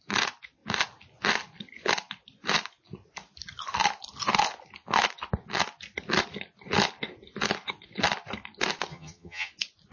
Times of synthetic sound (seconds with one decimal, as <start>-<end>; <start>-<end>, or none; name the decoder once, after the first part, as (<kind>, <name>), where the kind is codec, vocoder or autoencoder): 8.9-9.5 (vocoder, HiFi-GAN)